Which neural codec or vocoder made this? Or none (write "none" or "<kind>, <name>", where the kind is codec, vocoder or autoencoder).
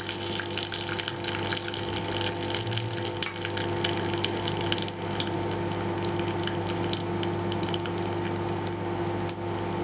none